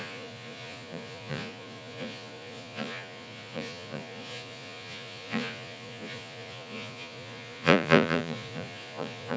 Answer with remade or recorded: remade